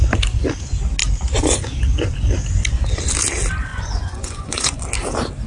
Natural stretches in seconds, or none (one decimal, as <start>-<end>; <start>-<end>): 0.0-3.7; 4.8-5.5